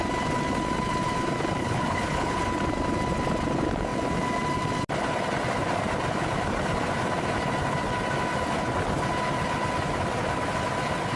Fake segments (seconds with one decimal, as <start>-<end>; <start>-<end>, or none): 1.6-2.4